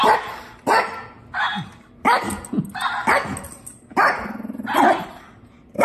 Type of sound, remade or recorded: recorded